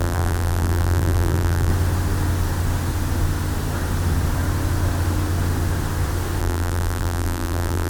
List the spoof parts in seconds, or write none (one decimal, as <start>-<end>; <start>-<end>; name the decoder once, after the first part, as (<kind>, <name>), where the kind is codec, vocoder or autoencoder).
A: 0.0-1.7 (vocoder, BigVGAN v2); 6.4-7.9